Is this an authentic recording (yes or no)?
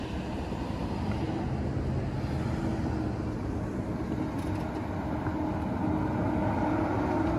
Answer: yes